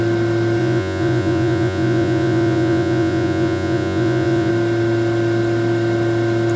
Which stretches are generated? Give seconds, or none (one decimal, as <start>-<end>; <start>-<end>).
0.6-4.5